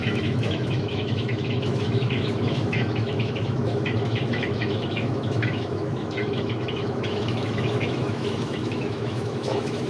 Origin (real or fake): fake